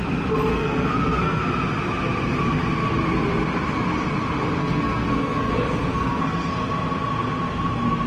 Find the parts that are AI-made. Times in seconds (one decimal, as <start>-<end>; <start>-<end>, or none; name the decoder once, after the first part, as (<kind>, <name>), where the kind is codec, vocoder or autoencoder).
0.5-1.4 (codec, SNAC); 4.6-5.5; 5.9-6.5